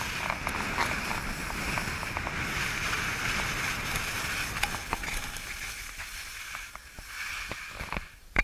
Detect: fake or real real